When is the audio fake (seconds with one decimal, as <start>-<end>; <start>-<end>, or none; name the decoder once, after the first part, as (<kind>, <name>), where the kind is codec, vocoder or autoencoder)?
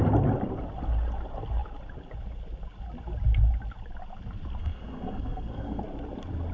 4.6-5.8 (codec, SNAC)